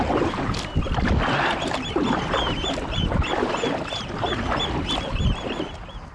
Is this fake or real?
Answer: real